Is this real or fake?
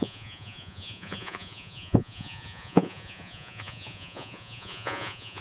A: fake